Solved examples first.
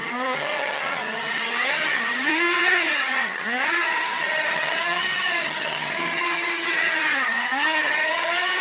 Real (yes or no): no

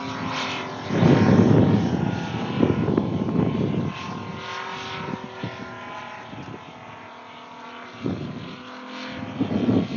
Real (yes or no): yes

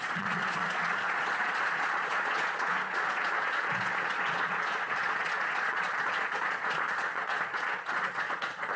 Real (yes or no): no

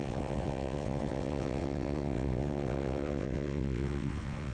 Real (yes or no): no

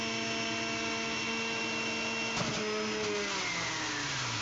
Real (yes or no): yes